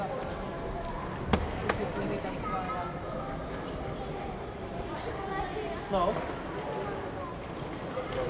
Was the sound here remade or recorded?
recorded